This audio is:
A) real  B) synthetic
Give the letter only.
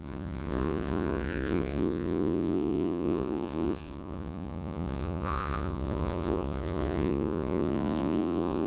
B